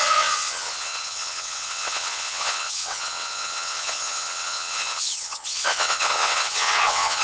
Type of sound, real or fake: fake